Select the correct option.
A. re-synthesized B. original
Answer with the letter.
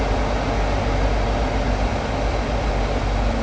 B